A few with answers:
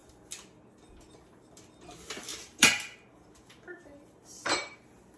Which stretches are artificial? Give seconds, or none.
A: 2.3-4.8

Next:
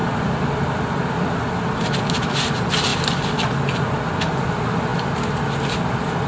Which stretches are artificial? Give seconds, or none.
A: 1.3-2.9; 4.5-6.3

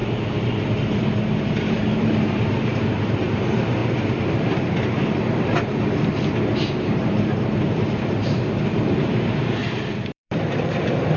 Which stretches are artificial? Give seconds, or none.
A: 0.0-3.8; 7.0-11.2

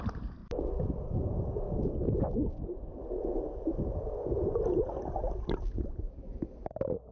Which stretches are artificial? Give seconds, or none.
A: 0.0-0.4; 2.9-7.1

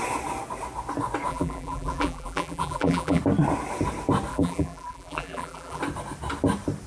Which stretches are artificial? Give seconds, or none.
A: 1.3-3.2; 4.3-5.8

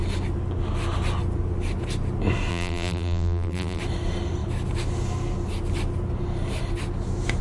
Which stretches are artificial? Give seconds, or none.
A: 2.5-3.8